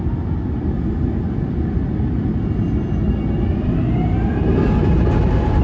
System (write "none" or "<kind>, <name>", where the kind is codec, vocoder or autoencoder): none